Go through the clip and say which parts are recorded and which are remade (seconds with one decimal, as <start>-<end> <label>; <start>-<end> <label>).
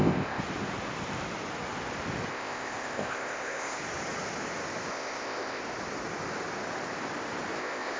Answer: 0.0-0.4 remade; 0.4-2.3 recorded; 2.3-3.8 remade; 3.8-4.9 recorded; 4.9-5.6 remade; 5.6-7.6 recorded; 7.6-8.0 remade